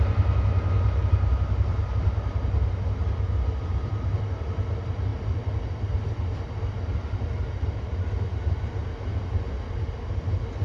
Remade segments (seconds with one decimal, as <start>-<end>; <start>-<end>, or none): none